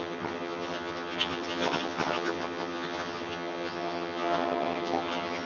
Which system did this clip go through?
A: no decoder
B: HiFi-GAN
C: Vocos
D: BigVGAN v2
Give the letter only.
B